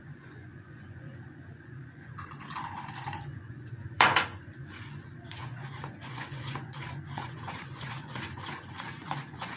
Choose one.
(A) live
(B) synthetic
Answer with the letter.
B